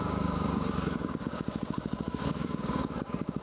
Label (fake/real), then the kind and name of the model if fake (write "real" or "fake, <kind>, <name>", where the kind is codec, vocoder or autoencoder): fake, codec, DAC